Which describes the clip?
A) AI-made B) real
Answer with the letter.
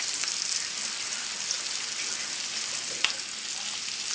B